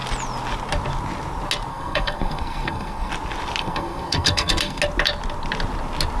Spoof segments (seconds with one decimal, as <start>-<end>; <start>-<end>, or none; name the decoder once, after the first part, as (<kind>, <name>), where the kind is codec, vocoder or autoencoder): 1.7-3.1 (codec, SNAC); 3.6-4.8